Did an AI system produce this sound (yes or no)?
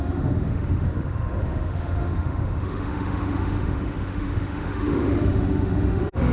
yes